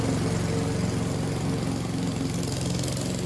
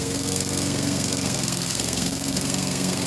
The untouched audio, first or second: first